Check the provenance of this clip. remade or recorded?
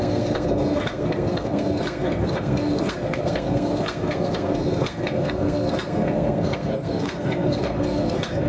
remade